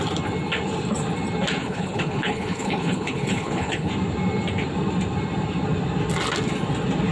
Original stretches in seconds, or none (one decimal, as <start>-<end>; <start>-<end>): 0.0-1.6; 3.9-7.1